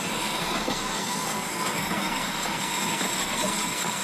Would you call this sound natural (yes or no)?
no